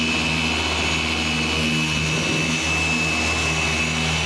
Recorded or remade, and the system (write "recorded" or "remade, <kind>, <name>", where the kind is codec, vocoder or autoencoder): recorded